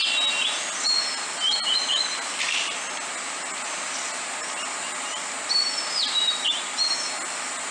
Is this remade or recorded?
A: recorded